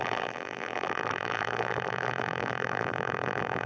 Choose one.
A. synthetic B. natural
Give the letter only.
A